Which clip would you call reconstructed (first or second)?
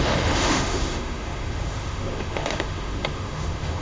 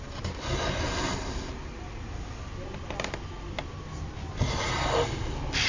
first